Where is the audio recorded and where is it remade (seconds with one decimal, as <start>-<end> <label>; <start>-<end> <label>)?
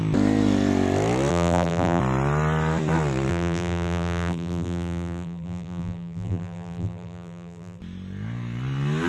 0.0-1.3 recorded; 1.3-2.0 remade; 2.0-3.3 recorded; 3.3-7.8 remade; 7.8-9.1 recorded